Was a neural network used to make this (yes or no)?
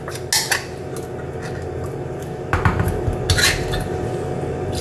no